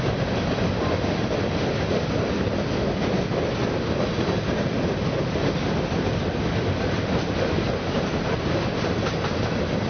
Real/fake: real